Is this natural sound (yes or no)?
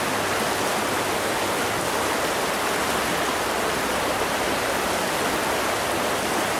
yes